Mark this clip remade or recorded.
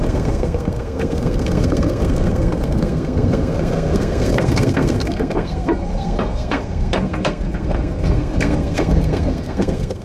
remade